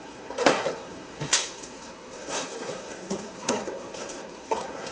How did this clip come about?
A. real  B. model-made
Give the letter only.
B